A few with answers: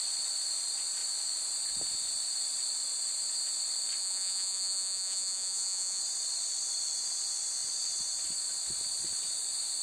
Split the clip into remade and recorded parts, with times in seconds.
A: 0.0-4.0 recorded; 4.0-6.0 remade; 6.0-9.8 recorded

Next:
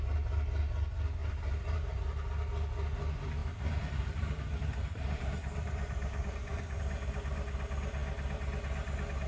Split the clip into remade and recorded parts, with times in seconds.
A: 0.0-1.2 recorded; 1.2-2.0 remade; 2.0-3.4 recorded; 3.4-6.8 remade; 6.8-9.3 recorded

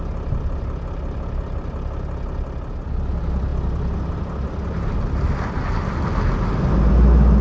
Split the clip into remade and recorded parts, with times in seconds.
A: 0.0-7.4 recorded